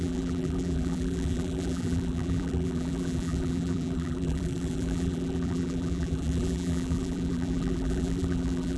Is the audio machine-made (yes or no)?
yes